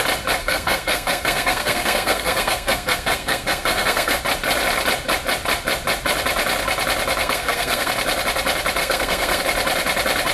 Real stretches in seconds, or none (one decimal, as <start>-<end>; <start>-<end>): 0.0-0.4; 4.2-7.2; 7.9-8.8; 9.4-10.3